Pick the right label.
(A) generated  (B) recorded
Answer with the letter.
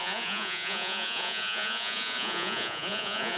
A